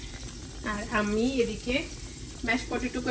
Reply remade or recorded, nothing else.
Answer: recorded